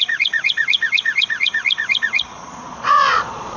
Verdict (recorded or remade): remade